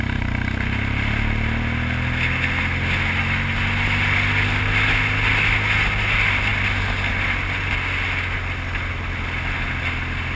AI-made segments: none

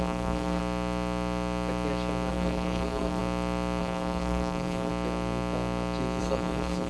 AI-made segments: 0.0-0.6 (codec, SNAC); 2.3-3.2; 3.8-4.9; 6.2-6.9

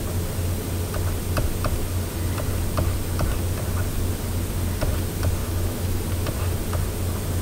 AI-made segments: 5.4-6.0 (autoencoder, DAC-VAE)

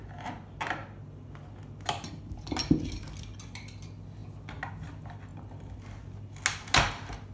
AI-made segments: none

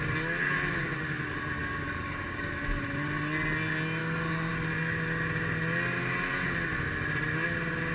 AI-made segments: 1.6-2.5 (codec, DAC); 4.0-4.5

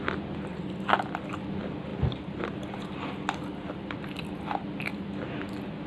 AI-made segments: 0.5-1.4 (vocoder, BigVGAN v2); 1.9-4.3